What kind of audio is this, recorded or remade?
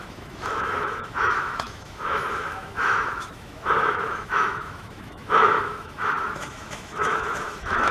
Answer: remade